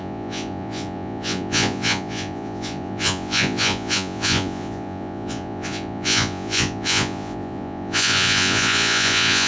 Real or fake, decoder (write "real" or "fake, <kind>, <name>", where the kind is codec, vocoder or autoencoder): fake, vocoder, Vocos